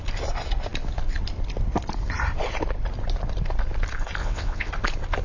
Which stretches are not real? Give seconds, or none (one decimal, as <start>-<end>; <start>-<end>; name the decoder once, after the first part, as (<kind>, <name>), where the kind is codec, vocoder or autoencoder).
4.2-4.7 (vocoder, WaveNeXt)